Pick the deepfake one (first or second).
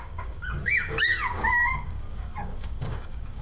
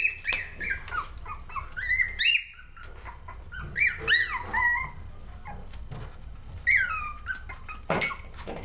first